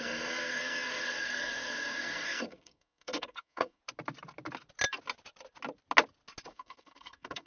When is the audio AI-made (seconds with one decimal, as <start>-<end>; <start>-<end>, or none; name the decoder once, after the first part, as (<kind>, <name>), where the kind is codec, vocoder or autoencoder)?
0.0-3.8 (codec, SNAC); 6.5-7.5